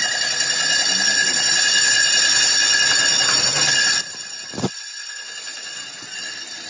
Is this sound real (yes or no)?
yes